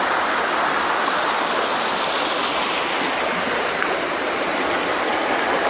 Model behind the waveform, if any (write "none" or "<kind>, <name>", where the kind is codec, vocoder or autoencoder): none